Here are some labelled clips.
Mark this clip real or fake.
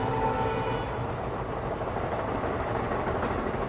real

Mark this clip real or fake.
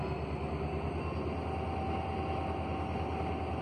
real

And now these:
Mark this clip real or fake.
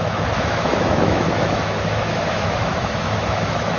fake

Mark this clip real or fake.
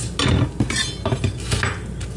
real